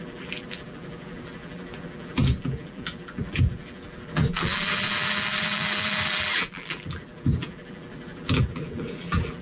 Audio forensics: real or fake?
fake